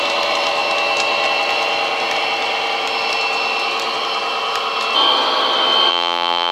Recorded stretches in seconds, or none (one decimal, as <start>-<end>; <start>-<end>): 0.0-5.9